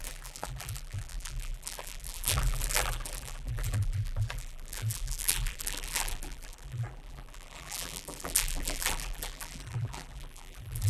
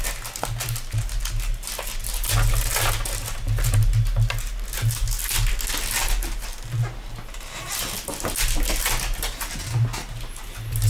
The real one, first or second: second